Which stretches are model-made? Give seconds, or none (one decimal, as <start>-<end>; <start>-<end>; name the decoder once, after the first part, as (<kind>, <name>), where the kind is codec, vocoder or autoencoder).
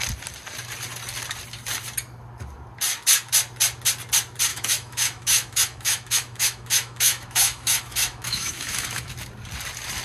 4.5-9.1 (autoencoder, DAC-VAE)